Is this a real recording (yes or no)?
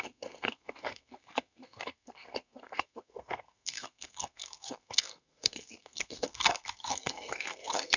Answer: no